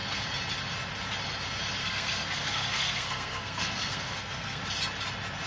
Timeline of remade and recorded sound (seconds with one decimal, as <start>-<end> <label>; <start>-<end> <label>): 0.0-1.8 recorded; 1.8-4.6 remade; 4.6-5.5 recorded